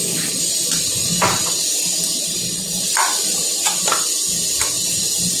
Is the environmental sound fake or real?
real